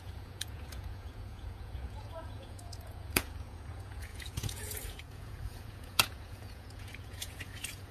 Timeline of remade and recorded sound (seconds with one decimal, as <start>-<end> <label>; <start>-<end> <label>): 0.0-7.9 remade